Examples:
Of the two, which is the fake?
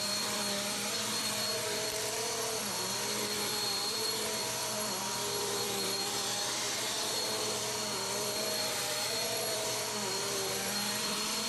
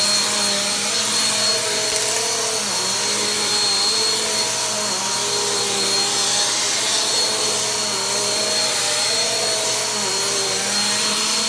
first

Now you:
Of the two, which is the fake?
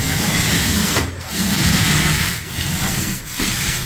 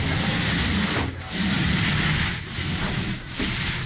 first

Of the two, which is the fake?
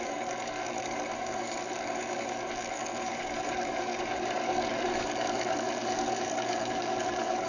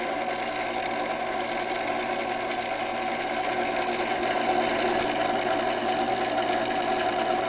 first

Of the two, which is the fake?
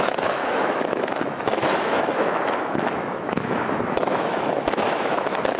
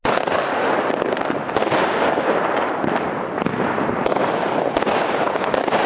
first